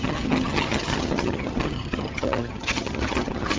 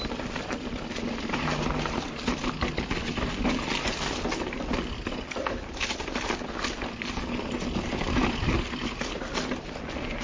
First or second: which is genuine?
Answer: second